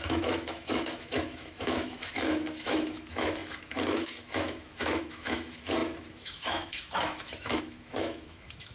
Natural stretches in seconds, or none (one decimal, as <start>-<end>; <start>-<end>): none